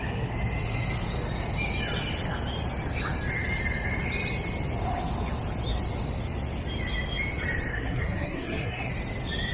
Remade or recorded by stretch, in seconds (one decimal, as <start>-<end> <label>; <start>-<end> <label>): 0.0-7.7 recorded; 7.7-8.9 remade; 8.9-9.5 recorded

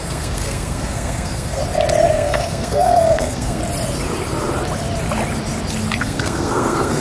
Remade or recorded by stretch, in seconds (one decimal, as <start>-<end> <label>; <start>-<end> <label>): 0.0-1.6 remade; 1.6-2.1 recorded; 2.1-3.6 remade; 3.6-6.0 recorded; 6.0-7.0 remade